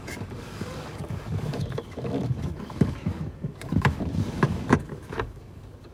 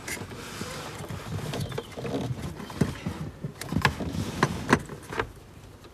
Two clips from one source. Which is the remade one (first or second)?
first